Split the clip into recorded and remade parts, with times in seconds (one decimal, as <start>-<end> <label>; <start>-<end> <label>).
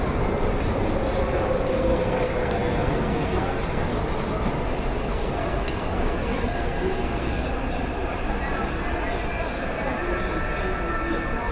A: 0.0-1.7 recorded; 1.7-4.0 remade; 4.0-5.0 recorded; 5.0-7.5 remade; 7.5-11.5 recorded